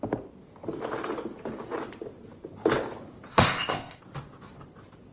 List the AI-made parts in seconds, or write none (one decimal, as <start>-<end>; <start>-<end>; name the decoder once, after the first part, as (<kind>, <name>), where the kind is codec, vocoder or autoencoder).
3.3-4.0 (codec, ZipCodec)